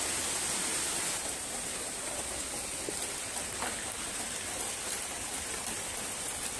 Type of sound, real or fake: real